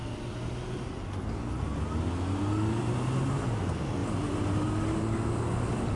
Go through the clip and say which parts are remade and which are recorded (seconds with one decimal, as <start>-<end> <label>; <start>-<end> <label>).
0.0-6.0 recorded